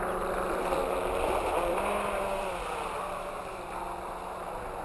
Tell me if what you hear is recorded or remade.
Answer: recorded